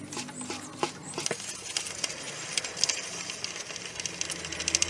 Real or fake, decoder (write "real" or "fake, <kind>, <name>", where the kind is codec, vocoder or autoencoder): real